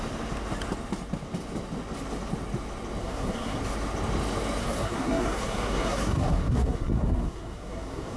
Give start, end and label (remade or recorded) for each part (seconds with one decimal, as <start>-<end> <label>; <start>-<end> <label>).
0.0-3.0 recorded; 3.0-3.6 remade; 3.6-4.6 recorded; 4.6-8.2 remade